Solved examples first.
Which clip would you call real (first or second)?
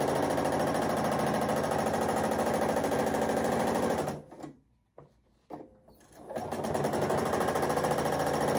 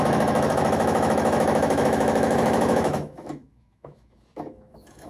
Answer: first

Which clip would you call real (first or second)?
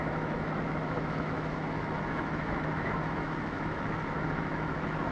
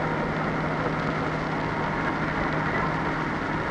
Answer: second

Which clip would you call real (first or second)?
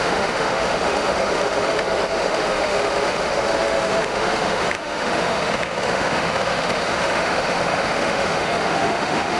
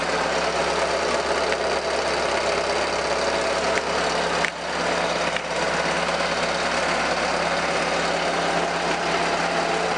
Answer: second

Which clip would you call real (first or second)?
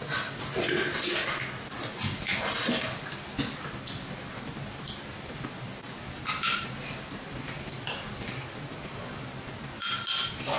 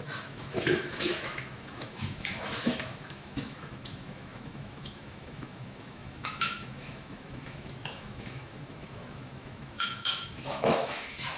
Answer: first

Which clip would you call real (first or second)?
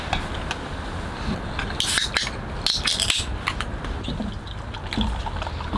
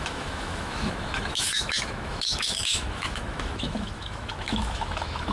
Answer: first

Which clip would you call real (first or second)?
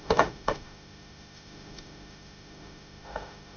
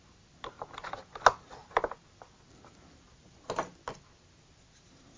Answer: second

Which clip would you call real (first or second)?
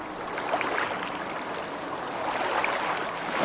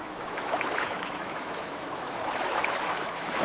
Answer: first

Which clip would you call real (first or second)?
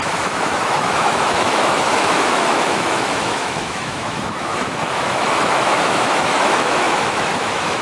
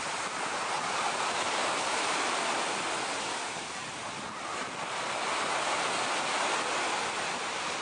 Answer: second